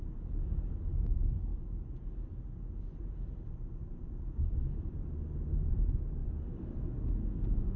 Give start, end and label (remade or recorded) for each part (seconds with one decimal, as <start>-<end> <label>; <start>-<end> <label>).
0.0-7.8 recorded